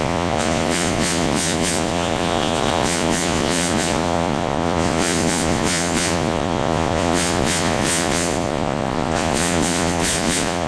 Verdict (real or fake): fake